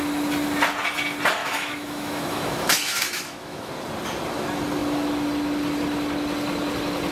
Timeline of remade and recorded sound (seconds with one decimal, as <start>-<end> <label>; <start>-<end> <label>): 0.0-1.4 recorded; 1.4-3.7 remade; 3.7-7.1 recorded